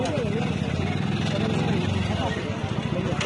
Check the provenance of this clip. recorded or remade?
recorded